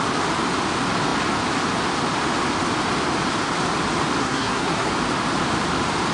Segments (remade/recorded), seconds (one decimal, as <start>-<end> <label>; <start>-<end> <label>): 0.0-4.2 recorded; 4.2-4.9 remade; 4.9-6.1 recorded